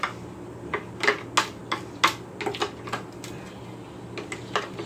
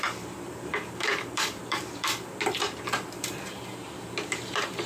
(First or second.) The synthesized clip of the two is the second